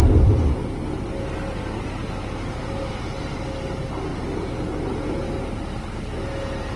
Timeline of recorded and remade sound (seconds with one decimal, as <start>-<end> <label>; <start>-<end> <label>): 0.0-6.8 recorded